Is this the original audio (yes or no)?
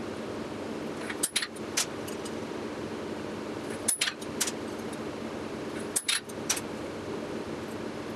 yes